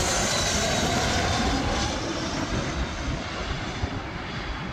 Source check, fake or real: fake